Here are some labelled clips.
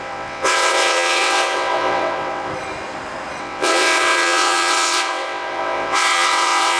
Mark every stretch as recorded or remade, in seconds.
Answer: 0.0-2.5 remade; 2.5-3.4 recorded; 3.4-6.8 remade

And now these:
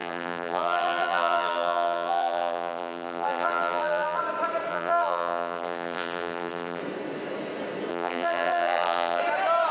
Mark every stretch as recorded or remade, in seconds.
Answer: 0.0-4.2 remade; 4.2-4.7 recorded; 4.7-6.8 remade; 6.8-7.9 recorded; 7.9-9.2 remade; 9.2-9.7 recorded

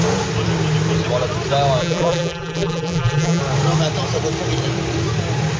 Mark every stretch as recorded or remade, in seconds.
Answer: 0.0-1.8 recorded; 1.8-3.4 remade; 3.4-5.6 recorded